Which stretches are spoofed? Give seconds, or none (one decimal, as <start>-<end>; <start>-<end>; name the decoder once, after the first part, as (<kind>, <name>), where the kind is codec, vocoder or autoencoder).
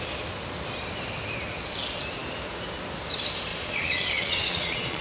3.5-5.0 (vocoder, Vocos)